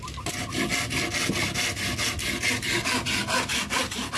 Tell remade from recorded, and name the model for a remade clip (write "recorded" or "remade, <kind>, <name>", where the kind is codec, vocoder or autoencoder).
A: recorded